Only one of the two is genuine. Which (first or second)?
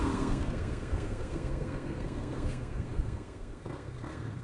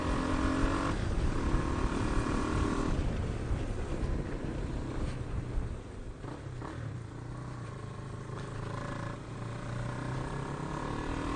second